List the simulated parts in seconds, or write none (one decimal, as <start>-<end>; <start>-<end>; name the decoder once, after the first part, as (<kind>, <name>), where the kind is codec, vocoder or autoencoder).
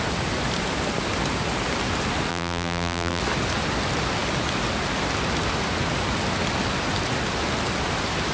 2.3-3.2 (vocoder, BigVGAN v2)